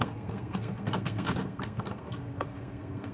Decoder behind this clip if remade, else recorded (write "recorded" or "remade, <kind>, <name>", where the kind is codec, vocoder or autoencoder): remade, codec, SNAC